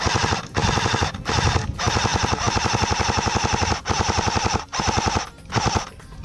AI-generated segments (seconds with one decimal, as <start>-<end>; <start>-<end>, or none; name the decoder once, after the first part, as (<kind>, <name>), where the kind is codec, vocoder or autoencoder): none